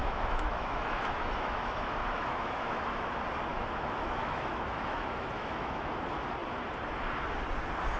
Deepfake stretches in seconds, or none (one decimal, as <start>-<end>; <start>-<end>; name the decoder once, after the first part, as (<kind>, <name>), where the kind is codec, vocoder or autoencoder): 0.0-3.1 (autoencoder, DAC-VAE); 3.5-5.9